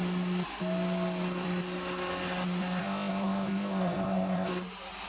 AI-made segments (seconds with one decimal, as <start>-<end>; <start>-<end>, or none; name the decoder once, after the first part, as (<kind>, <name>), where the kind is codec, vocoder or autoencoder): 2.8-4.5 (codec, ZipCodec)